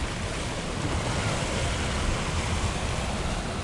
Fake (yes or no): no